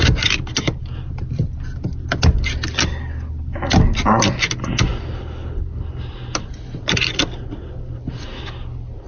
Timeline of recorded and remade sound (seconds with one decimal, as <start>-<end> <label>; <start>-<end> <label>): 0.0-9.1 recorded

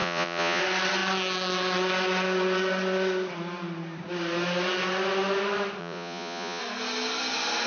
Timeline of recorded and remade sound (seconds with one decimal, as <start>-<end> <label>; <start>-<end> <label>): 0.0-0.6 remade; 0.6-5.8 recorded; 5.8-6.6 remade; 6.6-7.7 recorded

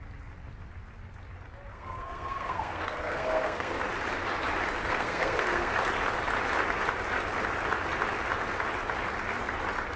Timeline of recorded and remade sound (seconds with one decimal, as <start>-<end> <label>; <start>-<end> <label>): 0.0-1.7 recorded; 1.7-3.8 remade; 3.8-4.8 recorded; 4.8-5.7 remade; 5.7-10.0 recorded

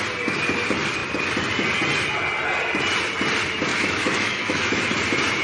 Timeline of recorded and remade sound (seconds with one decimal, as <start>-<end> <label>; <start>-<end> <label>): 0.0-3.7 recorded; 3.7-4.8 remade; 4.8-5.4 recorded

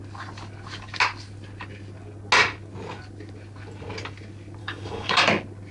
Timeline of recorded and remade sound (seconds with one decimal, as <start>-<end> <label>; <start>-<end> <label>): 0.0-4.6 recorded; 4.6-5.2 remade; 5.2-5.7 recorded